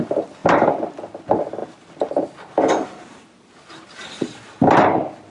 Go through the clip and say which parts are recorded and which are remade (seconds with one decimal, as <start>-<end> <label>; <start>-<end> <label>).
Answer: 0.0-0.4 recorded; 0.4-1.1 remade; 1.1-5.3 recorded